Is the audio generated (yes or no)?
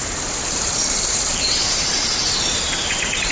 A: yes